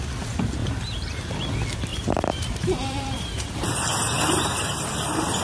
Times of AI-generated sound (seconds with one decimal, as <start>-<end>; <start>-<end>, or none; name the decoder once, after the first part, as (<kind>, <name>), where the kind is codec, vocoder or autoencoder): 0.6-1.1 (vocoder, BigVGAN v2); 1.9-3.5